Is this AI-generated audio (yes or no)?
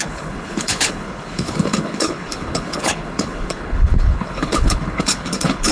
yes